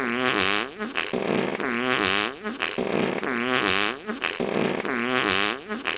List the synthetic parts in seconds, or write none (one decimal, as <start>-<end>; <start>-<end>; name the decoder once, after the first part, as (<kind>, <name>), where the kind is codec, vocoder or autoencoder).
none